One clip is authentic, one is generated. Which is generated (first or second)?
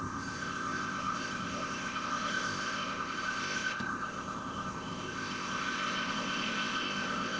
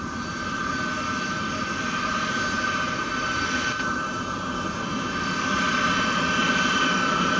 first